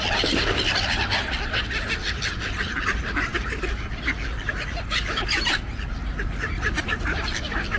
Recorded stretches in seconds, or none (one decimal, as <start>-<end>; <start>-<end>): 0.0-7.8